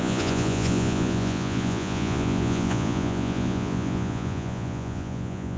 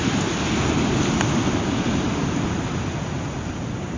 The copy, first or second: first